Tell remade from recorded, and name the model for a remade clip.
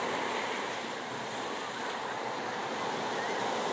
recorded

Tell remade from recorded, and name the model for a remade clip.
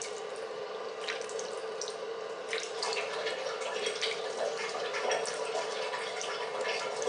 recorded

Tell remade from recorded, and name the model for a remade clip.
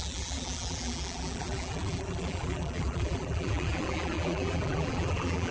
remade, vocoder, BigVGAN v2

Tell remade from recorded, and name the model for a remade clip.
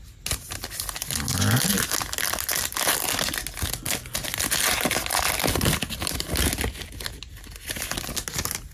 recorded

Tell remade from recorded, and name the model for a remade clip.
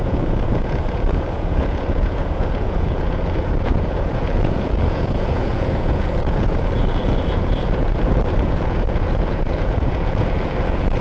remade, vocoder, Vocos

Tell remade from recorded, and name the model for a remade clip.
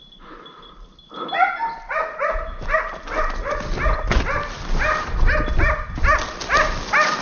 recorded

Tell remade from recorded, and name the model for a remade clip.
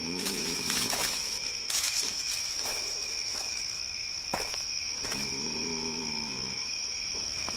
remade, autoencoder, DAC-VAE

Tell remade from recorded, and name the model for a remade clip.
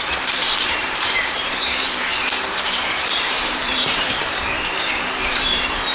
remade, vocoder, BigVGAN v2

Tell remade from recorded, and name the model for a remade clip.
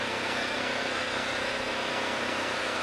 remade, codec, SNAC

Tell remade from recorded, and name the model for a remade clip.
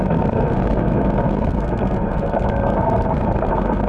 remade, codec, SNAC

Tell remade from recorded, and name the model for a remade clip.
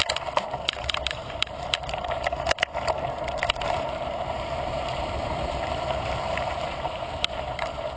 remade, vocoder, BigVGAN v2